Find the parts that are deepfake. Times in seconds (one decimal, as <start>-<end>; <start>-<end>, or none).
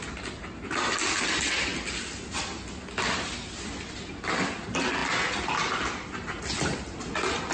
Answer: none